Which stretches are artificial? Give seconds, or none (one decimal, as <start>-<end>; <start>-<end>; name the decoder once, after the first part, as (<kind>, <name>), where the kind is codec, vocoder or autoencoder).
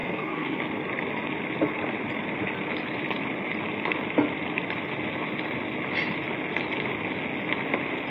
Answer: 0.0-0.6 (codec, SNAC)